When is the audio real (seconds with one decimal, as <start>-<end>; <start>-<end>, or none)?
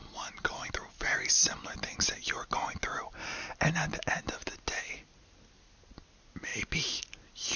0.0-7.6